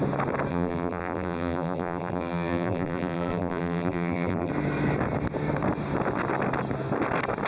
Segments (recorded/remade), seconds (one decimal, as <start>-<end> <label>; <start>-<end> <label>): 0.0-0.5 recorded; 0.5-4.5 remade; 4.5-7.5 recorded